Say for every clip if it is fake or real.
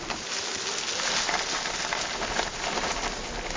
real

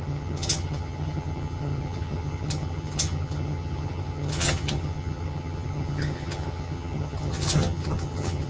fake